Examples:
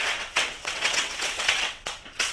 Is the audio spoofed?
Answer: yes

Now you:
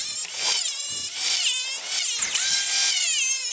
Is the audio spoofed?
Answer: no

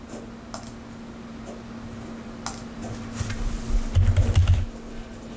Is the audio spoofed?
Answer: no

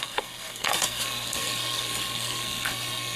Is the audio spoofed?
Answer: yes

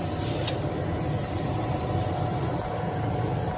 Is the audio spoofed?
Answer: no